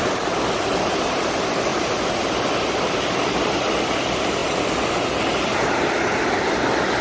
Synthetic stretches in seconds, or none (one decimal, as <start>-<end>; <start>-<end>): 1.7-3.3